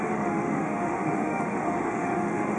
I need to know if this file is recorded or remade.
remade